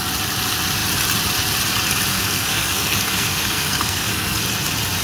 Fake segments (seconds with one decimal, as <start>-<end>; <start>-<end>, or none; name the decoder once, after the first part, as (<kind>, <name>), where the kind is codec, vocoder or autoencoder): 2.1-4.4 (codec, SNAC)